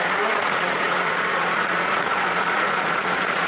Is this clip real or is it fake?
fake